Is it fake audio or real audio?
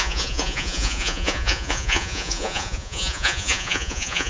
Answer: fake